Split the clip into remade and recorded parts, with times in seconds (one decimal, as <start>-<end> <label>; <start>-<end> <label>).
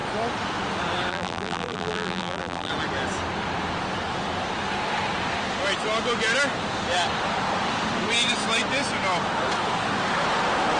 0.0-1.1 recorded; 1.1-2.7 remade; 2.7-10.8 recorded